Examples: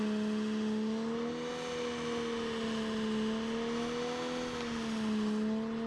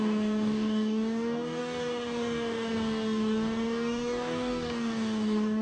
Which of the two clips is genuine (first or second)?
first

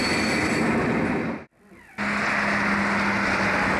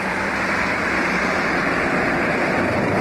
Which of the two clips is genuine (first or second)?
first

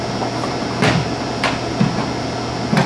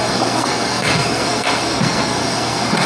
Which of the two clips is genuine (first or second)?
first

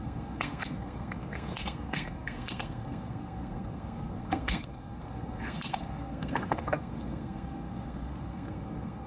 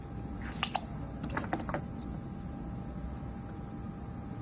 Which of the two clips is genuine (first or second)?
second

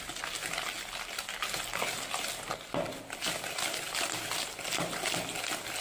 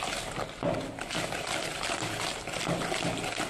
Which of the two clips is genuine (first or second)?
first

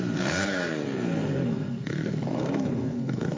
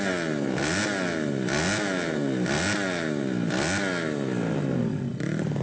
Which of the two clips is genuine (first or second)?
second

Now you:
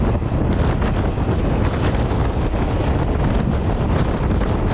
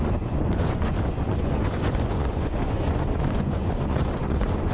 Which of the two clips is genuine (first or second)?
first